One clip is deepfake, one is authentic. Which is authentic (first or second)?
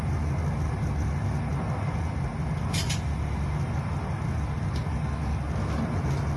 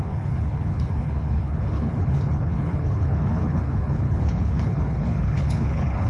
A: first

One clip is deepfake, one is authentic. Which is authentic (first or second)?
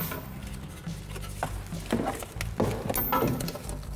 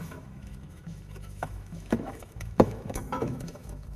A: first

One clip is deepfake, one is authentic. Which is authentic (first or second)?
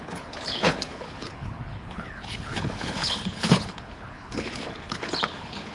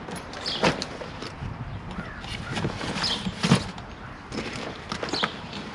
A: second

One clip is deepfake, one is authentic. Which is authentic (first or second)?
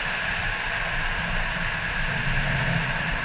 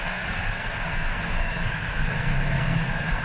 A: first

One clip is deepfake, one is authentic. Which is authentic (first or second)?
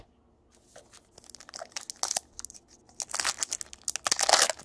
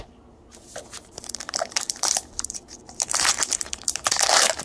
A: first